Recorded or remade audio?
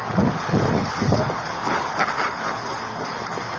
remade